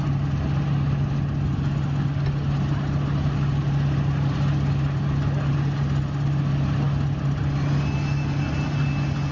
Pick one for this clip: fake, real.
real